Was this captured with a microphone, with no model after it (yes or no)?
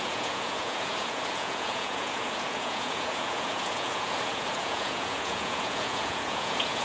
no